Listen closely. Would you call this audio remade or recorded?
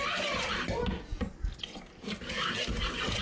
recorded